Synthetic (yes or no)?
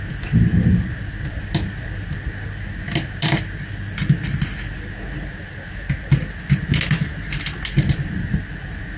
no